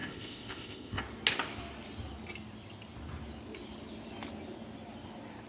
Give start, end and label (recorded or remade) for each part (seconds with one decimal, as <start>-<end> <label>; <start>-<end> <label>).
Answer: 0.0-1.0 remade; 1.0-5.5 recorded